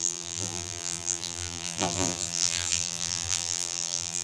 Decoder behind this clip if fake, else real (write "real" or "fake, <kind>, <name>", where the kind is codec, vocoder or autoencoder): fake, vocoder, BigVGAN v2